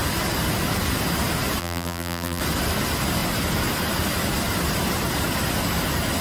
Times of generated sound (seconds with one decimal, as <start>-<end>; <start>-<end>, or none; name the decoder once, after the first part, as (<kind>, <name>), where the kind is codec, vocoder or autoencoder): 1.6-2.4 (vocoder, BigVGAN v2)